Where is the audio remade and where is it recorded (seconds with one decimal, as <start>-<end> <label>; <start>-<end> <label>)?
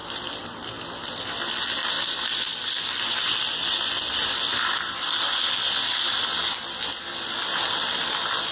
0.0-8.5 recorded